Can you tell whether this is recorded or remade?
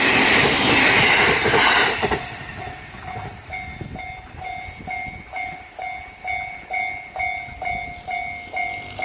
recorded